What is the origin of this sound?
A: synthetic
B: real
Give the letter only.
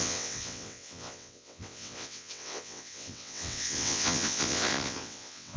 A